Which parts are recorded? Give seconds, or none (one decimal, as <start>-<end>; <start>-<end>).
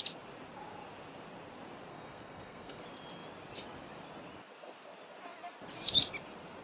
0.0-1.9; 2.8-6.6